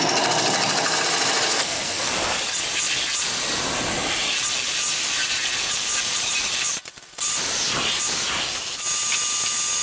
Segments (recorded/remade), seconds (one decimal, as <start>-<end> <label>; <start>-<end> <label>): 0.0-1.5 recorded; 1.5-2.1 remade; 2.1-9.8 recorded